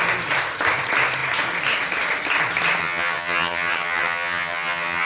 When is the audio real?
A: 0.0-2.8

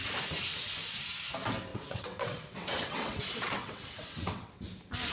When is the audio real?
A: 0.0-1.7; 4.6-5.1

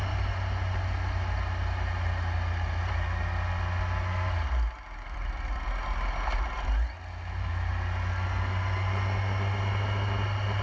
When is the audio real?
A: 0.0-7.1; 7.7-10.6

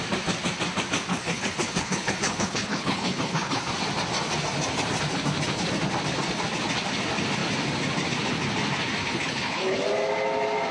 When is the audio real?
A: 0.0-1.1; 3.7-9.0; 9.8-10.7

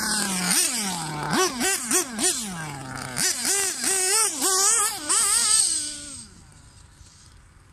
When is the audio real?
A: 0.0-7.7

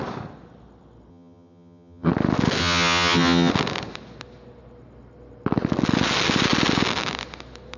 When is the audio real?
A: 0.0-1.1; 2.1-2.6; 3.5-7.8